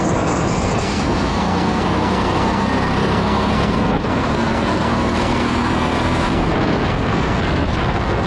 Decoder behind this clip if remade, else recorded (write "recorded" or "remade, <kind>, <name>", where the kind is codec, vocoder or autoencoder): remade, codec, SNAC